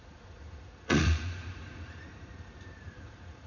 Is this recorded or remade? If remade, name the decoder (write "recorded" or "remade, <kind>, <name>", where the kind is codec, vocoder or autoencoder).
remade, vocoder, Vocos